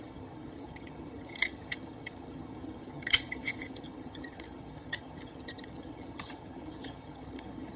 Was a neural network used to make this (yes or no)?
yes